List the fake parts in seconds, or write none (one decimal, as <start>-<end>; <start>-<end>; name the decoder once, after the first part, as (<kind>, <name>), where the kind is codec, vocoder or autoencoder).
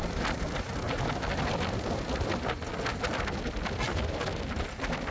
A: none